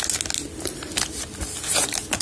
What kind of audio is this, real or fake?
real